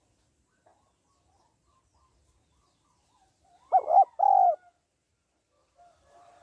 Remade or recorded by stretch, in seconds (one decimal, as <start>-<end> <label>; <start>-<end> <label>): 0.0-6.4 recorded